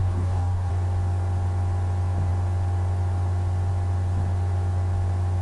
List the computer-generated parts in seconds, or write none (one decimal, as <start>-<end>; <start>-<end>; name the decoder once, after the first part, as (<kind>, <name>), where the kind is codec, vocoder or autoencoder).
0.0-0.7 (codec, DAC)